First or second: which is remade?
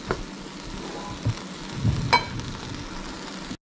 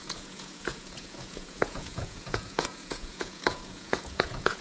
second